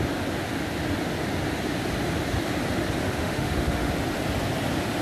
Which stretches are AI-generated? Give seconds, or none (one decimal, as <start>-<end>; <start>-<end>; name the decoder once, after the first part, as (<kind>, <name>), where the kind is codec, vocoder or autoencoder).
3.0-3.9 (autoencoder, DAC-VAE)